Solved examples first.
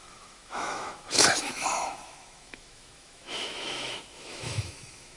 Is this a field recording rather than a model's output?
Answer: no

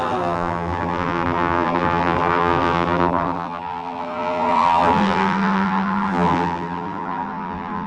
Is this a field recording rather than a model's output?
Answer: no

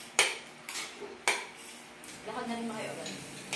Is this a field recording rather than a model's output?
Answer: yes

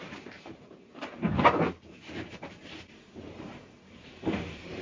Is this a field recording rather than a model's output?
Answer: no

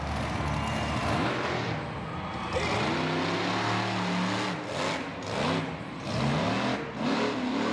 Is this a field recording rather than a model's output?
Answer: yes